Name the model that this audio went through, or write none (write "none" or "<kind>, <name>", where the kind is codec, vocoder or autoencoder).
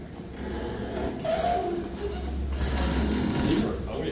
none